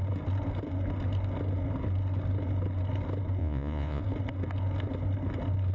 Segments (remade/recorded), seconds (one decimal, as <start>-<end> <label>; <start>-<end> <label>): 0.0-3.4 recorded; 3.4-4.0 remade; 4.0-5.7 recorded